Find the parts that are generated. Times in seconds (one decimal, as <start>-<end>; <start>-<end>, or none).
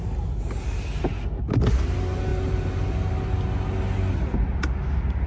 none